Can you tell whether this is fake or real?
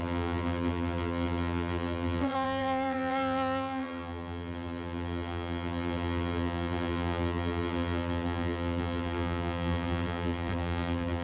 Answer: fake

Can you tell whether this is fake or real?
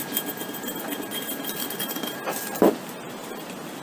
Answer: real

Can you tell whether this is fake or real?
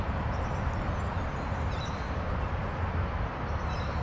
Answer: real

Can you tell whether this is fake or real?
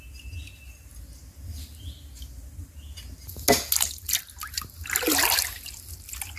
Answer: real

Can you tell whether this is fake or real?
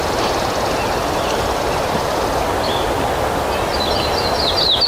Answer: real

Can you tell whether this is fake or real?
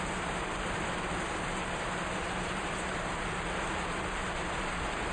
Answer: real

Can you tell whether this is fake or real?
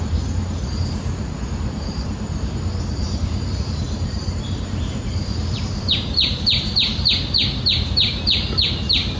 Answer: fake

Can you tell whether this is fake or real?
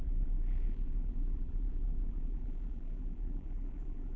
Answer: fake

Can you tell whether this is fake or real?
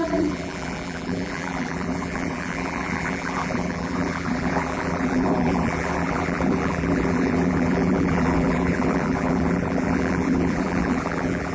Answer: fake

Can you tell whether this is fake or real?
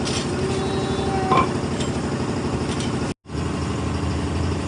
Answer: real